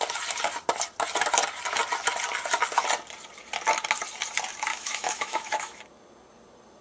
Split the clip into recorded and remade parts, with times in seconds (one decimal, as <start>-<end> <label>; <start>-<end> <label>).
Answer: 0.0-4.7 recorded; 4.7-5.8 remade; 5.8-6.8 recorded